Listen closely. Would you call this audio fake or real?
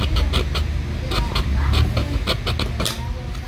real